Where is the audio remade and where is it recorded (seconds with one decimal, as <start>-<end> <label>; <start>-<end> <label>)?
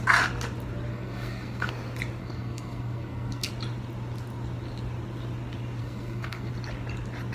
0.0-0.9 recorded; 0.9-1.7 remade; 1.7-2.2 recorded; 2.2-3.5 remade; 3.5-5.8 recorded; 5.8-6.5 remade; 6.5-7.3 recorded